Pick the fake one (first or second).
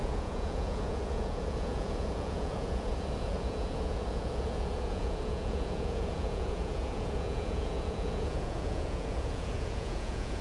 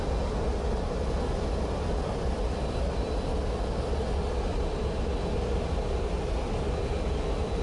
first